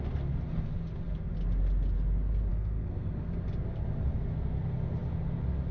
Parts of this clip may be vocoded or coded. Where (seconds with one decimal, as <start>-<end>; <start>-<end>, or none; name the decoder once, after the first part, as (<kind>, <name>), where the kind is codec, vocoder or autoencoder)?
2.5-3.3 (codec, SNAC)